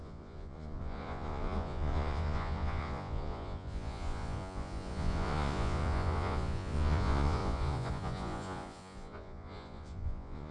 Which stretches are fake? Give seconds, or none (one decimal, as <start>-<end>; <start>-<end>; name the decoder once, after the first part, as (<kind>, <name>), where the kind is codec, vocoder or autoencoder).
0.0-10.5 (vocoder, Vocos)